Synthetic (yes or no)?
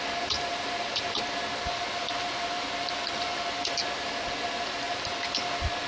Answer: no